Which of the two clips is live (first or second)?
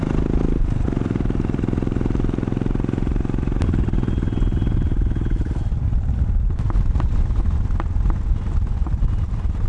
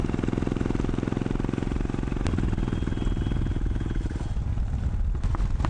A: second